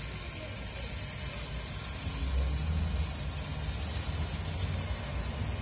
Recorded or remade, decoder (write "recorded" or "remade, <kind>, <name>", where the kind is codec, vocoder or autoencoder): recorded